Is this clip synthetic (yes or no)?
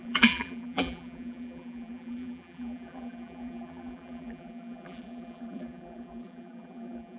yes